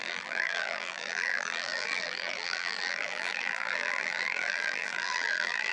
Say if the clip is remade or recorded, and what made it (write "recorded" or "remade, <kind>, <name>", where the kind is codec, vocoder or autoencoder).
remade, vocoder, BigVGAN v2